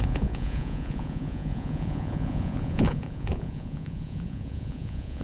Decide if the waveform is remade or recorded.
remade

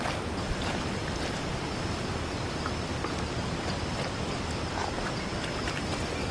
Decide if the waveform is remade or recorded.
recorded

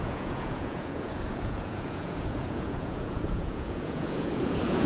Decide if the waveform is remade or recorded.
remade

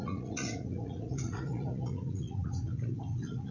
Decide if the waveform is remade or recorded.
remade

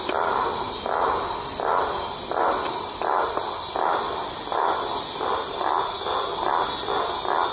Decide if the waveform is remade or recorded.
recorded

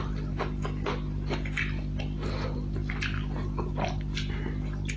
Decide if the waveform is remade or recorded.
recorded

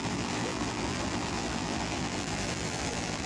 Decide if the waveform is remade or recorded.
remade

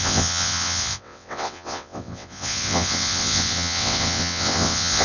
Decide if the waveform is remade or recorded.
remade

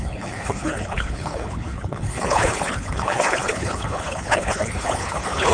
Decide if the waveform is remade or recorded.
remade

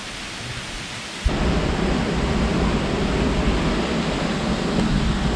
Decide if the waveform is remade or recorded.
recorded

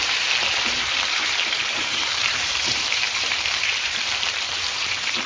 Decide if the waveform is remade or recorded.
remade